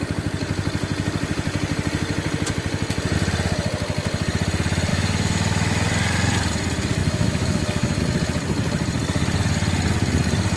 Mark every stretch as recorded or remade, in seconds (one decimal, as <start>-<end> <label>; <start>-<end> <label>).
0.0-4.9 recorded; 4.9-5.9 remade; 5.9-7.0 recorded; 7.0-8.0 remade; 8.0-10.6 recorded